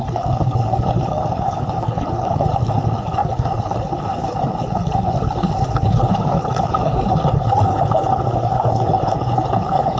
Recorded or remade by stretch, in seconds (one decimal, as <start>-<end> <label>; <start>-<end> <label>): 0.0-10.0 remade